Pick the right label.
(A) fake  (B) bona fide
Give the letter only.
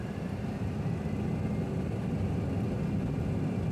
B